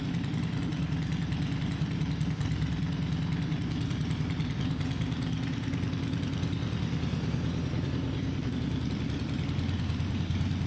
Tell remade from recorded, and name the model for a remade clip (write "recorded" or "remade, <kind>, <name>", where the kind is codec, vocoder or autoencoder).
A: remade, vocoder, BigVGAN v2